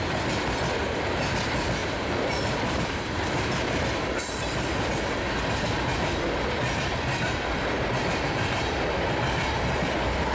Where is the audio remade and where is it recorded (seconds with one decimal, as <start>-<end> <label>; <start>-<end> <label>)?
0.0-1.8 recorded; 1.8-3.8 remade; 3.8-8.0 recorded; 8.0-8.8 remade; 8.8-10.3 recorded